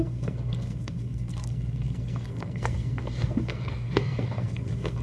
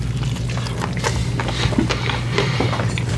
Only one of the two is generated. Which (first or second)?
first